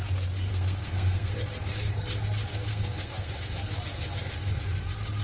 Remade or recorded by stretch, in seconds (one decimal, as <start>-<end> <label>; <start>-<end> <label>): 0.0-0.5 recorded; 0.5-1.3 remade; 1.3-2.7 recorded; 2.7-3.3 remade; 3.3-5.2 recorded